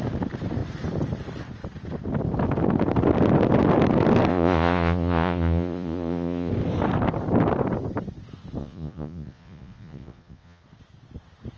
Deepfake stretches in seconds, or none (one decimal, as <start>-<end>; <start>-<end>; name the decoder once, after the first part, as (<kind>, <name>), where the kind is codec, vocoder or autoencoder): 4.3-6.5 (vocoder, Vocos); 8.6-10.6